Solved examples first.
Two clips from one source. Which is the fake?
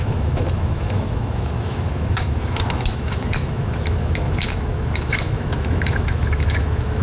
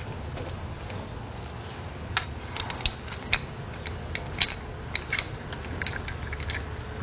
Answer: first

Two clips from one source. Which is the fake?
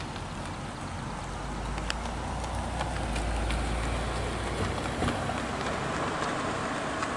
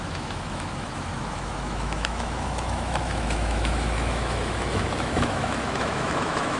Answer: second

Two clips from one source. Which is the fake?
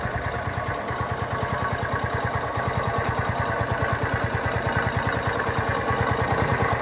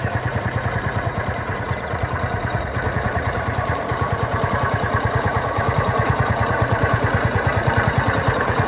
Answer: second